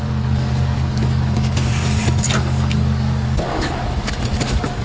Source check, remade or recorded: remade